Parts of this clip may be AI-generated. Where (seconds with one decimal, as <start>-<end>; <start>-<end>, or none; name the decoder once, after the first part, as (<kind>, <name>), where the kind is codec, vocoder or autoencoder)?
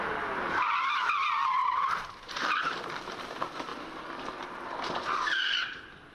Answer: 1.6-2.2 (vocoder, BigVGAN v2)